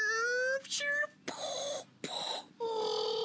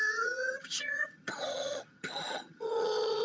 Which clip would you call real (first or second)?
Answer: first